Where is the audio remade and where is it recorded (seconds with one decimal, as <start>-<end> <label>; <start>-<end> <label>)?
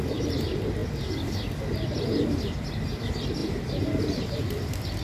0.0-5.0 recorded